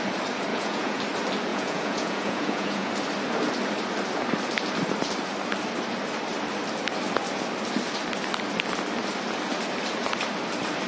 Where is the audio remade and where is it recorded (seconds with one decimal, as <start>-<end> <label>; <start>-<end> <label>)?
0.0-0.5 recorded; 0.5-1.0 remade; 1.0-1.5 recorded; 1.5-2.9 remade; 2.9-10.9 recorded